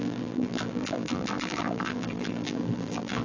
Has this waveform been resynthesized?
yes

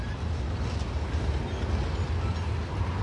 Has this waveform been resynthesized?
no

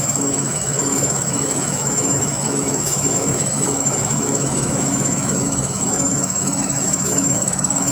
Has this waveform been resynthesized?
yes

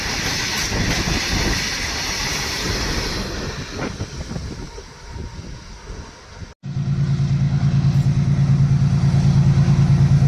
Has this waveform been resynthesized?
no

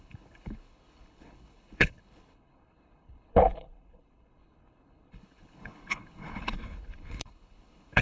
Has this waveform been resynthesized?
yes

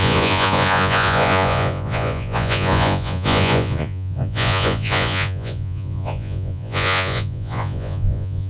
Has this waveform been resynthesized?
yes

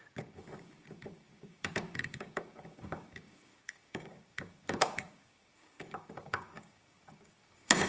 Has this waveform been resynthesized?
yes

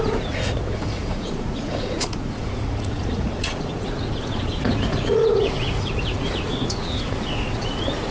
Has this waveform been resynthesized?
yes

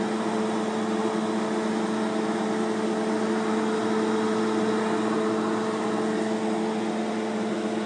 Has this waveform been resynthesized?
no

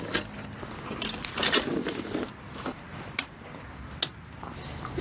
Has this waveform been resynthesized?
no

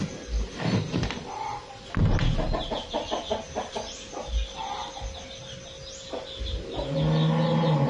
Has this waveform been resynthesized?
no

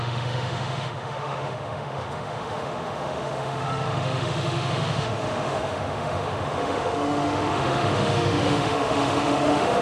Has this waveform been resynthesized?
yes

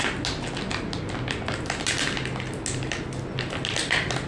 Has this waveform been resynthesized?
no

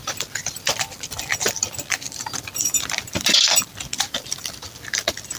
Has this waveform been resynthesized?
yes